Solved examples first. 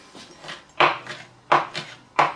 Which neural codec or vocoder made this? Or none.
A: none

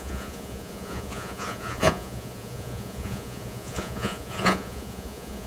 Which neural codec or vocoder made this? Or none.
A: vocoder, Vocos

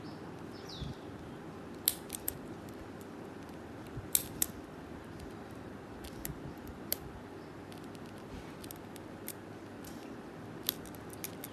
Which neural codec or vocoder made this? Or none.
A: none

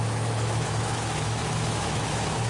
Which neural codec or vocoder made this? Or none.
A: autoencoder, DAC-VAE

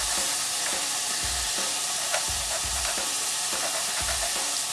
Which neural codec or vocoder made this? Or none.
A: none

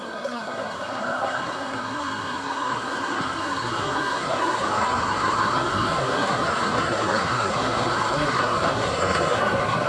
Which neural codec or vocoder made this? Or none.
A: codec, SNAC